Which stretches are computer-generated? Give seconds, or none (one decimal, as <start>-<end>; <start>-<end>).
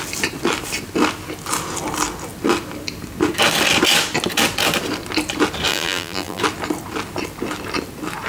5.7-6.4